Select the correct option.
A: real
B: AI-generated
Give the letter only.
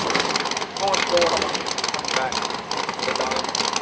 A